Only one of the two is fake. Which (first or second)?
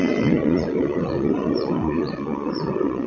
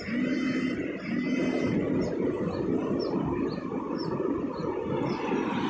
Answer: first